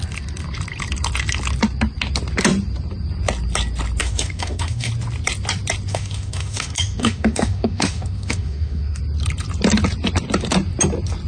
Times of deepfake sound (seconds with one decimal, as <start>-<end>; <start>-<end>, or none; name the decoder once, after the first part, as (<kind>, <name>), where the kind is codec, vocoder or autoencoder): 4.0-4.9 (autoencoder, DAC-VAE); 5.9-9.0